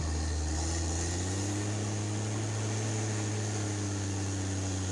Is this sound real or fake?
real